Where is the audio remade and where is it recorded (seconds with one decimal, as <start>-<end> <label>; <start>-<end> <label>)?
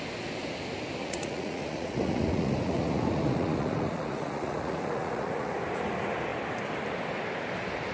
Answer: 0.0-1.0 recorded; 1.0-5.5 remade; 5.5-7.9 recorded